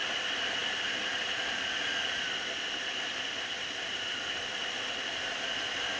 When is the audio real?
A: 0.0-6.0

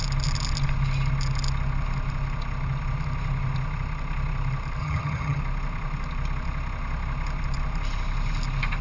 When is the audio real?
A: 0.0-4.8; 5.4-8.8

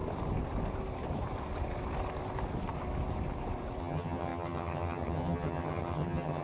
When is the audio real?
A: 0.0-3.8